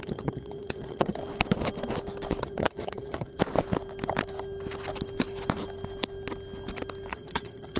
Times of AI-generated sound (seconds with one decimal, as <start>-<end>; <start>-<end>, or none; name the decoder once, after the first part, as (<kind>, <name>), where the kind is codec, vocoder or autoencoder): 0.0-1.2 (vocoder, HiFi-GAN); 2.4-3.4; 7.1-7.8